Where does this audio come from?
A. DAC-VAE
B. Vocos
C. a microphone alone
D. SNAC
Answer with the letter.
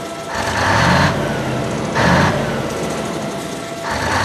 C